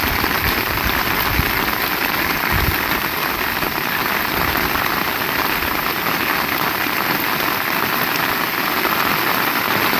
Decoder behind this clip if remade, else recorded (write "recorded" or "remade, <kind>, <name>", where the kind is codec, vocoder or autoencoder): recorded